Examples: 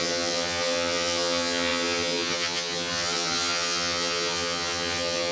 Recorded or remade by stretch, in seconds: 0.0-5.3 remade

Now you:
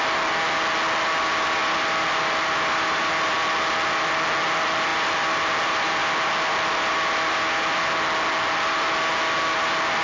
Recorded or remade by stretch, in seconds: 0.0-1.6 recorded; 1.6-3.0 remade; 3.0-4.9 recorded; 4.9-5.4 remade; 5.4-10.0 recorded

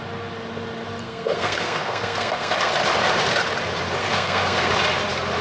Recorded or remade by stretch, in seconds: 0.0-1.0 recorded; 1.0-2.7 remade; 2.7-4.0 recorded; 4.0-4.7 remade; 4.7-5.4 recorded

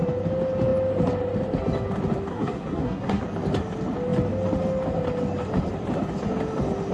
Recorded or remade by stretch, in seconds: 0.0-2.3 recorded; 2.3-3.2 remade; 3.2-6.9 recorded